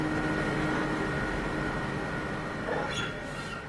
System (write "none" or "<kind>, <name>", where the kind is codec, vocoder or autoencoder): none